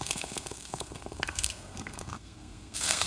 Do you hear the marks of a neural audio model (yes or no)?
yes